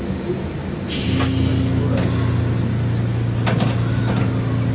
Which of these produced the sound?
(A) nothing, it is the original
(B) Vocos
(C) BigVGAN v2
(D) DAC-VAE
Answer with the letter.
A